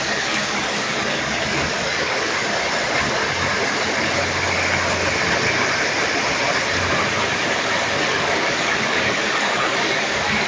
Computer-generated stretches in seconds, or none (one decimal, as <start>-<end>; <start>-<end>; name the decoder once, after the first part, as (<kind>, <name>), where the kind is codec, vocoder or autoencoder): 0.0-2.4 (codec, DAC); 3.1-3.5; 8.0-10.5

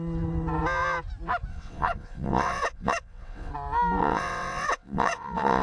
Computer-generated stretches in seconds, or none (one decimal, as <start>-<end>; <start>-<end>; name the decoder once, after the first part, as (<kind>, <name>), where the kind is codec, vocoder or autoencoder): 1.5-3.5 (vocoder, WaveNeXt); 4.0-5.6

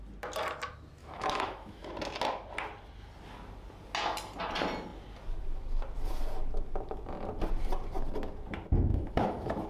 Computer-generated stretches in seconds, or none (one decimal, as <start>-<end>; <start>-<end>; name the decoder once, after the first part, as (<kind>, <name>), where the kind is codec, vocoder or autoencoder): 1.0-1.9 (autoencoder, DAC-VAE); 8.9-9.7